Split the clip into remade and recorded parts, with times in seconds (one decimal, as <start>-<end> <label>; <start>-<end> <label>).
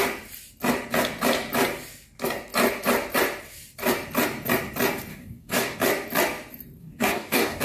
0.0-5.1 recorded; 5.1-5.8 remade; 5.8-6.8 recorded; 6.8-7.6 remade